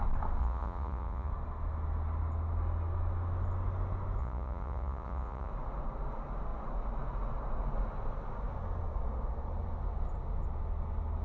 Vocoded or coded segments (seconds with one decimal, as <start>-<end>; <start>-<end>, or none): 0.4-1.3; 4.2-5.5